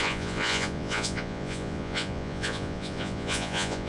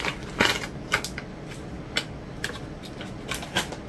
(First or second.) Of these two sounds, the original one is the second